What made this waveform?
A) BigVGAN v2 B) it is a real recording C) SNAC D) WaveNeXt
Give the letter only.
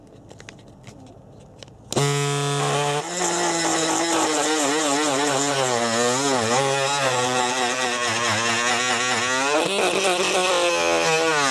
B